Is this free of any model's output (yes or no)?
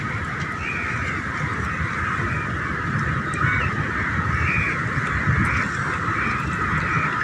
yes